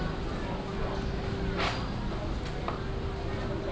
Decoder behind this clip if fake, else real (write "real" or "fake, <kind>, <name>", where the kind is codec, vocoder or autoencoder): real